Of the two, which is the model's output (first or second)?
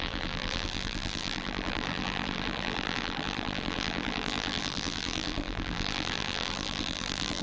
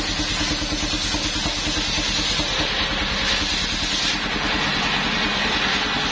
first